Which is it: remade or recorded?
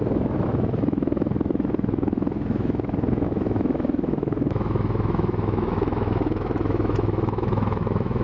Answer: remade